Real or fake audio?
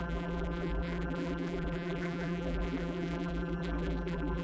fake